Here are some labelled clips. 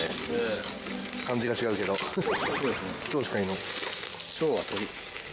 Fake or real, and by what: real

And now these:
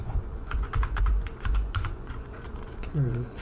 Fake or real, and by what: fake, vocoder, Vocos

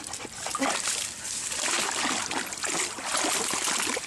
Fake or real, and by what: real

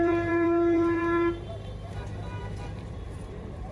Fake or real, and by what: fake, vocoder, BigVGAN v2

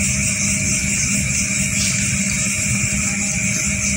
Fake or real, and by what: real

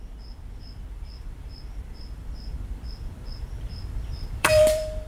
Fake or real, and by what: fake, vocoder, BigVGAN v2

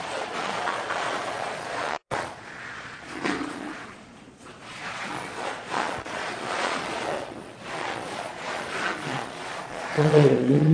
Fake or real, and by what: fake, vocoder, Vocos